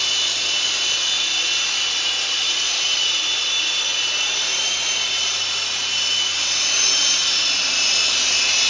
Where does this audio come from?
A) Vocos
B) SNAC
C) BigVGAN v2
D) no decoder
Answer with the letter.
C